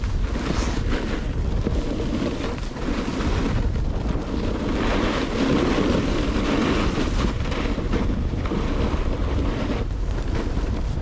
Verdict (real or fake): real